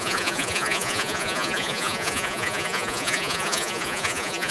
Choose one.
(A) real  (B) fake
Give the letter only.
B